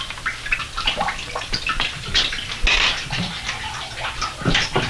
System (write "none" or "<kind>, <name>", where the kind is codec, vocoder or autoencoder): none